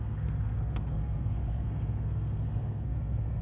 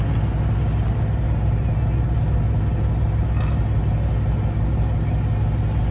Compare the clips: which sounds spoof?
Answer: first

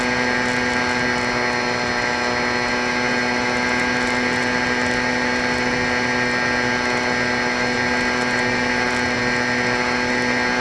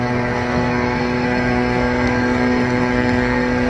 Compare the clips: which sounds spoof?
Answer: second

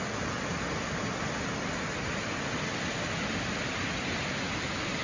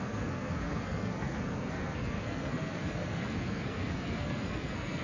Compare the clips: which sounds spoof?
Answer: second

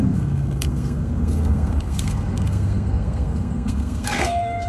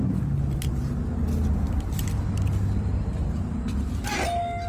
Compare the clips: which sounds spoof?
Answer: first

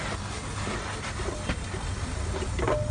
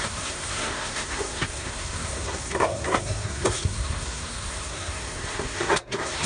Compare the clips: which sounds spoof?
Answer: second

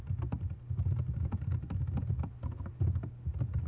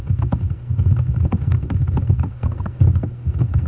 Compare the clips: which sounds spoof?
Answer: second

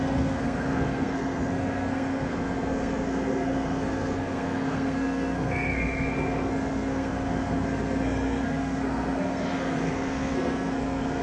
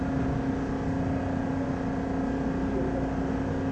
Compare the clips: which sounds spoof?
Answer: first